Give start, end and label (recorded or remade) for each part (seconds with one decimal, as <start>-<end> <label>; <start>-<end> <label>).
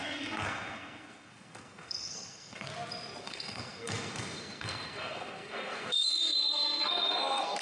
0.0-2.7 remade; 2.7-3.2 recorded; 3.2-7.6 remade